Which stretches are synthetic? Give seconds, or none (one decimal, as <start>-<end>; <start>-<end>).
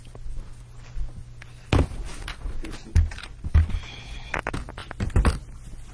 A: none